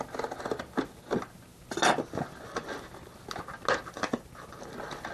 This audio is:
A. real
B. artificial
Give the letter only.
A